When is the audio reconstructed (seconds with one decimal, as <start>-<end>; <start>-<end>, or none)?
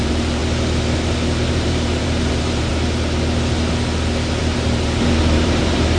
0.0-0.4; 1.5-2.7; 4.4-6.0